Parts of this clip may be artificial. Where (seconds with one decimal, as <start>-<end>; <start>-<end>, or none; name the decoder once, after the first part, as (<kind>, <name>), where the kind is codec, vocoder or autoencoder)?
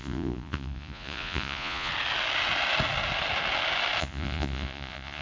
0.0-1.9 (vocoder, Vocos); 4.0-5.2